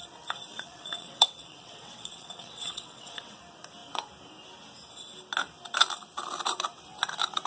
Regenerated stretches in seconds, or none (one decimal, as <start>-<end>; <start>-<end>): 0.5-3.4